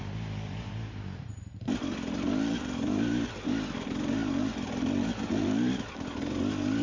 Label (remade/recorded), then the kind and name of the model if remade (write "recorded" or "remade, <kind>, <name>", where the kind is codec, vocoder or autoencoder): recorded